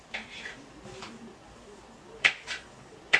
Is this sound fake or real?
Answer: fake